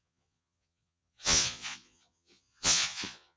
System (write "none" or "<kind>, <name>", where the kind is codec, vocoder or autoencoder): vocoder, Vocos